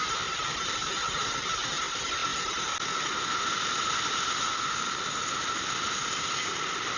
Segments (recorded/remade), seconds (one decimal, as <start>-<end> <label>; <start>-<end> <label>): 0.0-7.0 recorded